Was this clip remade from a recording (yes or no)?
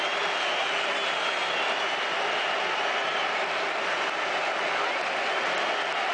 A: no